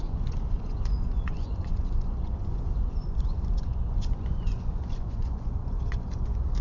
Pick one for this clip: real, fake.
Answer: fake